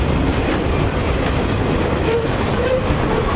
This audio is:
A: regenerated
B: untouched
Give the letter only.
B